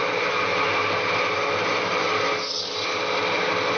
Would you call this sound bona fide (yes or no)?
yes